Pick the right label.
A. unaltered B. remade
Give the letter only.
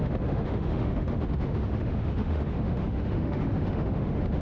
B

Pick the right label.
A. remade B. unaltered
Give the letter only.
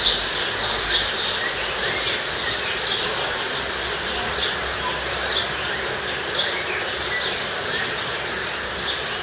B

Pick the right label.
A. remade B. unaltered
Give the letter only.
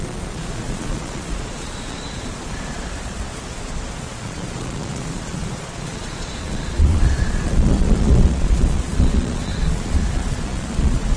A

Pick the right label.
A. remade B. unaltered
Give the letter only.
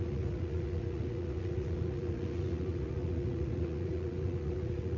A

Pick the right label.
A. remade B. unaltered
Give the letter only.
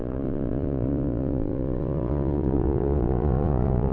A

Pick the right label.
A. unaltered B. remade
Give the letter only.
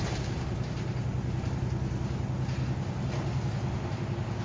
A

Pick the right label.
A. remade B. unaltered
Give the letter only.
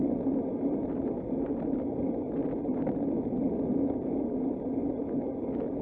B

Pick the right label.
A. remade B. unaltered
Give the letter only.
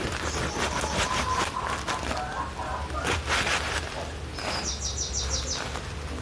B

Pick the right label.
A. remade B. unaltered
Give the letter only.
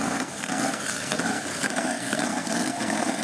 A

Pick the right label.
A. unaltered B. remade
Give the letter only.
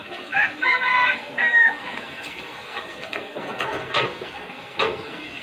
B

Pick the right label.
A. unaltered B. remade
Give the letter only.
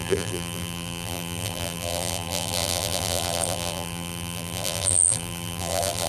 B